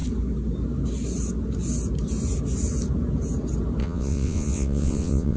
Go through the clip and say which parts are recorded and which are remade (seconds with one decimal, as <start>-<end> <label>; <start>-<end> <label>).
0.0-3.8 recorded; 3.8-5.4 remade